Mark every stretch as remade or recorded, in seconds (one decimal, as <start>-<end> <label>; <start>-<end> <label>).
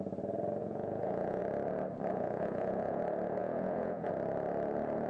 0.0-0.6 recorded; 0.6-1.4 remade; 1.4-2.1 recorded; 2.1-3.0 remade; 3.0-3.4 recorded; 3.4-4.1 remade; 4.1-5.1 recorded